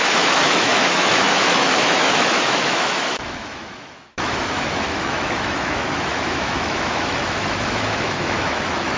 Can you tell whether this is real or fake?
fake